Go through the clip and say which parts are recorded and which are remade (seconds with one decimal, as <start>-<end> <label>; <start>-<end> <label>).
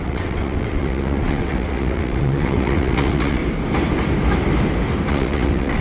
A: 0.0-3.4 remade; 3.4-5.1 recorded; 5.1-5.8 remade